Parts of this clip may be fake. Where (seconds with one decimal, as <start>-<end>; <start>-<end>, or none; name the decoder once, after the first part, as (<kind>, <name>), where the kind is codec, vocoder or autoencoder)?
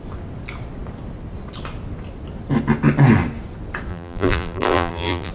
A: 3.9-5.3 (vocoder, BigVGAN v2)